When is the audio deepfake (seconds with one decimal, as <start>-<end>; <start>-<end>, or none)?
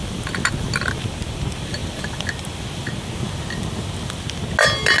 none